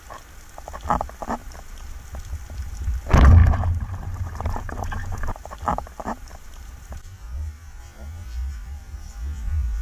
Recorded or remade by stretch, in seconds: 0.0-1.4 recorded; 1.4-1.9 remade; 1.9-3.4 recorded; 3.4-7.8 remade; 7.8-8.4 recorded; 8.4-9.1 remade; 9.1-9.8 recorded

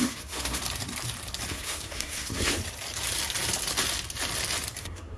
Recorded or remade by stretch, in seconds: 0.0-0.6 remade; 0.6-1.5 recorded; 1.5-2.6 remade; 2.6-4.8 recorded; 4.8-5.2 remade

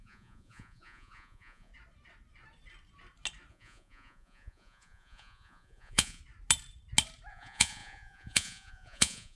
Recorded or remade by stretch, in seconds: 0.0-1.7 remade; 1.7-3.5 recorded; 3.5-6.2 remade; 6.2-7.3 recorded; 7.3-9.4 remade

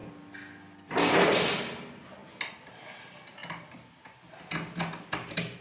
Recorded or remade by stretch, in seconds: 0.0-5.6 recorded

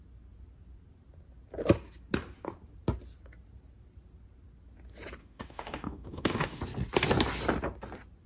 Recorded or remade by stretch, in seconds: 0.0-5.2 recorded; 5.2-6.6 remade; 6.6-8.3 recorded

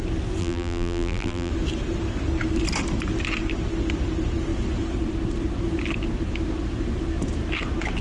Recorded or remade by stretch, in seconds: 0.0-0.4 recorded; 0.4-1.5 remade; 1.5-8.0 recorded

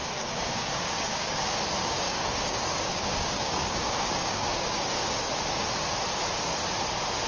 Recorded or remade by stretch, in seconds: 0.0-1.4 remade; 1.4-1.8 recorded; 1.8-5.3 remade; 5.3-7.3 recorded